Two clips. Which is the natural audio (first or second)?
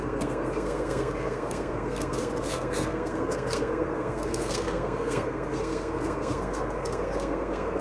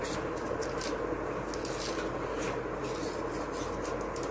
second